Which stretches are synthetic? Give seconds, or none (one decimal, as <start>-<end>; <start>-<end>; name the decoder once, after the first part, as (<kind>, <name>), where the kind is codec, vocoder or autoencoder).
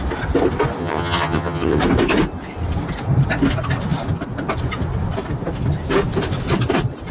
0.8-1.8 (vocoder, HiFi-GAN)